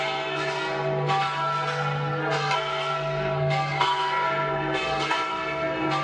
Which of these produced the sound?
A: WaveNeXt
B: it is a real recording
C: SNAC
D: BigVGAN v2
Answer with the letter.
C